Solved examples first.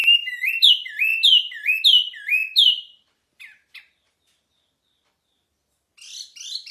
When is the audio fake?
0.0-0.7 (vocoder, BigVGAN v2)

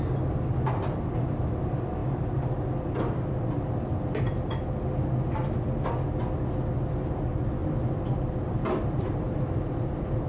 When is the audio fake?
2.0-2.6 (vocoder, BigVGAN v2); 7.6-9.6

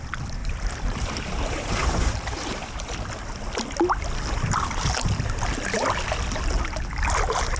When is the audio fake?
0.4-3.0 (vocoder, BigVGAN v2)

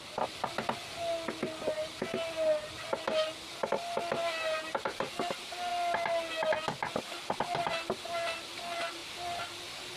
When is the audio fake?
4.2-5.1 (vocoder, BigVGAN v2)